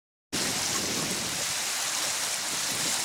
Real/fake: real